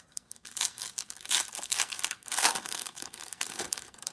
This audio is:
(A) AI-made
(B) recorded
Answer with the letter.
A